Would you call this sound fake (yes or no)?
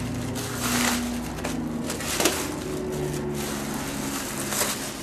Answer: no